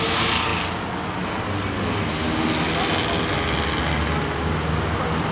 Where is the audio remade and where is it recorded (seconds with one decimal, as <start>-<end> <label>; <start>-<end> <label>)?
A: 0.0-5.3 recorded